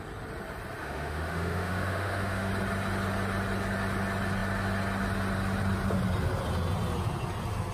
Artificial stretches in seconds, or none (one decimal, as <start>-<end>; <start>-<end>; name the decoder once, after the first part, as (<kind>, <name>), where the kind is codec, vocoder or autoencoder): 0.8-2.5 (autoencoder, DAC-VAE)